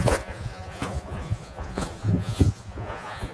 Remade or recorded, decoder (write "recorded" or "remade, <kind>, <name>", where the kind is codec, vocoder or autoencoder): remade, vocoder, Vocos